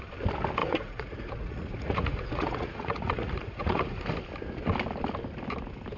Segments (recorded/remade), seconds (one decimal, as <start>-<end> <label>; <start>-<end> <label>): 0.0-0.6 recorded; 0.6-4.0 remade; 4.0-6.0 recorded